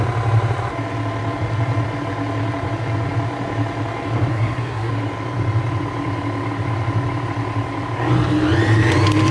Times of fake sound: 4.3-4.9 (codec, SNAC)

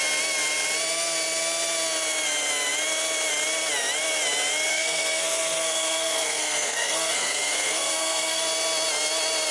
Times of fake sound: 4.7-8.4 (codec, SNAC)

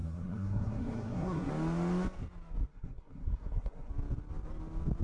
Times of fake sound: 0.0-1.5 (codec, SNAC); 2.7-3.9

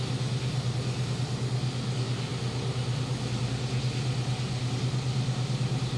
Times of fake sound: none

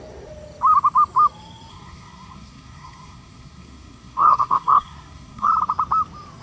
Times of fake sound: 1.7-5.5 (codec, SNAC)

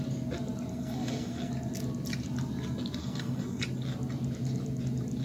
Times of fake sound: 0.7-1.5 (codec, SNAC); 3.0-3.6

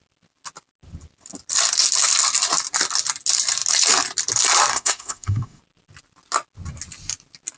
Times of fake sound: 4.7-5.6 (codec, SNAC)